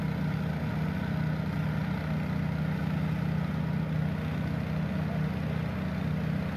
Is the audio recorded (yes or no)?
yes